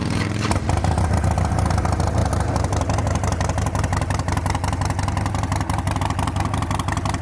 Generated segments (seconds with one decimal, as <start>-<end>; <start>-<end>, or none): none

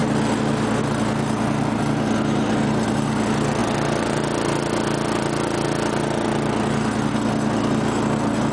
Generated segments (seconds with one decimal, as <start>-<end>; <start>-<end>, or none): none